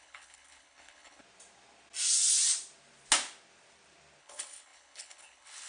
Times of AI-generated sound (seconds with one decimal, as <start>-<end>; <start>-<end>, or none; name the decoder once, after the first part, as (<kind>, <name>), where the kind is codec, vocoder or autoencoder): 0.0-1.2 (codec, HILCodec); 4.2-5.7